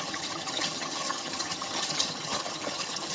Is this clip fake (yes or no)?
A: yes